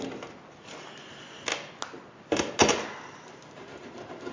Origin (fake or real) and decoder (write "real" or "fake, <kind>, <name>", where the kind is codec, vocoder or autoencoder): real